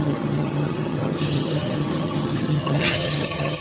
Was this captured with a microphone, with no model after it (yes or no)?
no